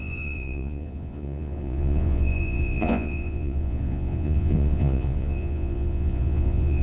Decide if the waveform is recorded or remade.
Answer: remade